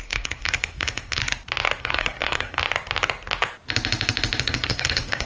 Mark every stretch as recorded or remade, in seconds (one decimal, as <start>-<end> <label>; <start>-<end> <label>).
0.0-1.2 remade; 1.2-1.8 recorded; 1.8-2.6 remade; 2.6-4.4 recorded; 4.4-5.3 remade